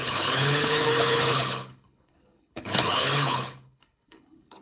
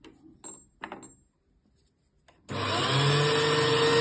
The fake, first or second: first